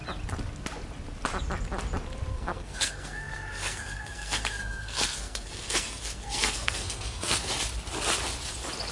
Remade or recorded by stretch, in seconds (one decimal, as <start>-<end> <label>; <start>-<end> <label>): 0.0-2.3 recorded; 2.3-7.5 remade; 7.5-8.9 recorded